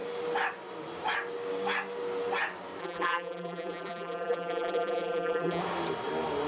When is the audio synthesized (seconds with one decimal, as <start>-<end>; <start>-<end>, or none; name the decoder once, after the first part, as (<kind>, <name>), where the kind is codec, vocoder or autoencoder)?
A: 2.8-5.6 (vocoder, BigVGAN v2)